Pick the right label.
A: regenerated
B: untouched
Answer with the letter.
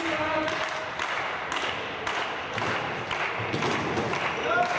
B